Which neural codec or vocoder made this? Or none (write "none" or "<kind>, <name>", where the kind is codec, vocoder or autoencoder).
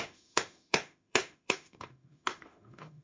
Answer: autoencoder, DAC-VAE